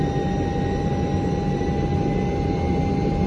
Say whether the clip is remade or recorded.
recorded